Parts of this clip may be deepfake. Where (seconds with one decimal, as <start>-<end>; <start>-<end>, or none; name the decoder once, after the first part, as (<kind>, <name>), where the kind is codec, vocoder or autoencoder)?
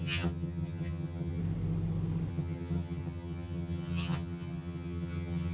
0.0-1.4 (vocoder, HiFi-GAN); 2.3-5.5